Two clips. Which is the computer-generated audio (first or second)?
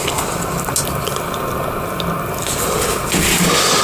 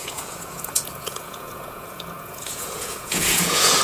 second